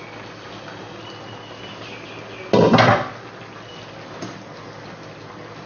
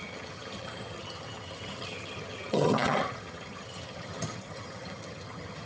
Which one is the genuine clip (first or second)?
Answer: first